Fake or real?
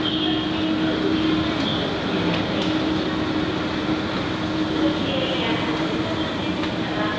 real